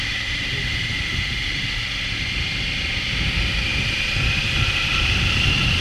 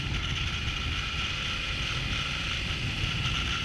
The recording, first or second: second